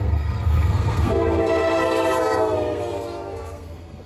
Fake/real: fake